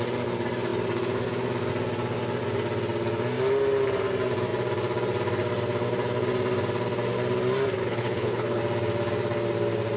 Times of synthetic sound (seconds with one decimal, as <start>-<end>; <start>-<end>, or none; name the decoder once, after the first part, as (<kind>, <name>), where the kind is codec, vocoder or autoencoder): 7.8-8.6 (codec, HILCodec)